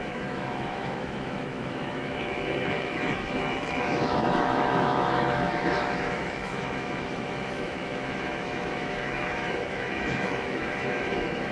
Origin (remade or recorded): remade